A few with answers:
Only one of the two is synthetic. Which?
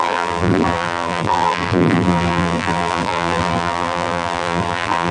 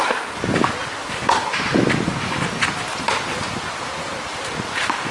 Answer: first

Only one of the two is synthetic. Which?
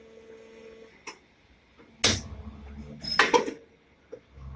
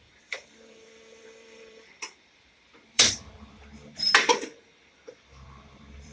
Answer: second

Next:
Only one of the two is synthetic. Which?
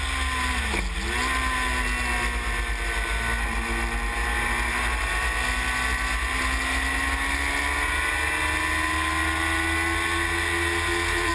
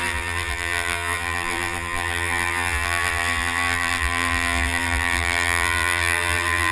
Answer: second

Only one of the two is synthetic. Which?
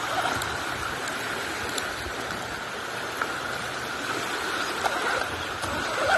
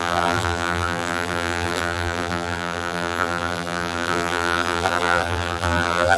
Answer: second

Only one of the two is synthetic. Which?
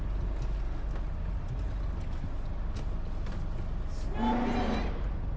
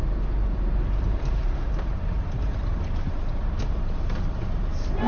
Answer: second